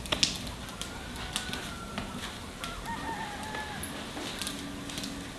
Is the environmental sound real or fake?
real